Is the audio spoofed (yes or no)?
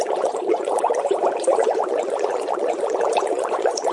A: yes